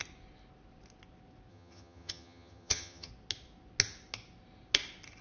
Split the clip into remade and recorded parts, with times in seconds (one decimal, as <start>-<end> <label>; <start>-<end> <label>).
0.0-1.5 recorded; 1.5-3.1 remade; 3.1-5.2 recorded